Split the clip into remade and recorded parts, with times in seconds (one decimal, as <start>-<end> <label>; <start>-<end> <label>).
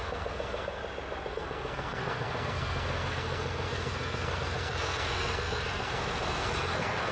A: 0.0-0.8 remade; 0.8-1.3 recorded; 1.3-7.1 remade